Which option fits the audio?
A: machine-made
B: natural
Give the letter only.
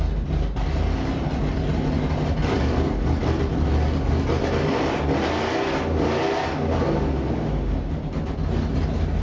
B